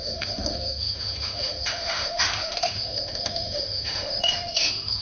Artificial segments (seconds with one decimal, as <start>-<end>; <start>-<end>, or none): 0.0-5.0